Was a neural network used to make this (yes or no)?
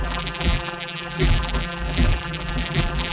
yes